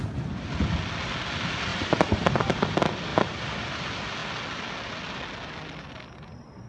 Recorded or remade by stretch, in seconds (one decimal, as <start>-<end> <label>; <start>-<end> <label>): 0.0-1.7 recorded; 1.7-2.6 remade; 2.6-3.1 recorded; 3.1-3.7 remade; 3.7-6.7 recorded